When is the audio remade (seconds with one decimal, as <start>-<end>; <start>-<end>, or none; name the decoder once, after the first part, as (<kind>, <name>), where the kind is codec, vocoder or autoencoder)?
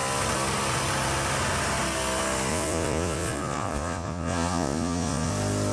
2.5-5.3 (vocoder, Vocos)